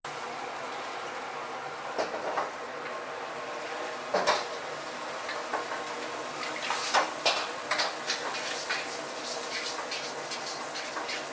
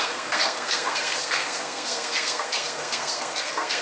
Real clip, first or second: first